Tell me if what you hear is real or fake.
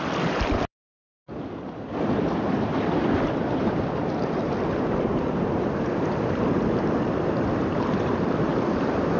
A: real